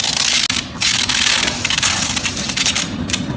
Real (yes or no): yes